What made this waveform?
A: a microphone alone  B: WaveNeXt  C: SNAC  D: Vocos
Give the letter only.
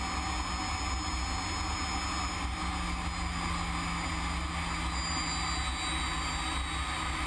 A